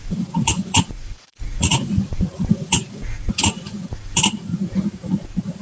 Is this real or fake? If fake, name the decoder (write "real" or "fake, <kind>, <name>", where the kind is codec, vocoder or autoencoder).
fake, vocoder, Vocos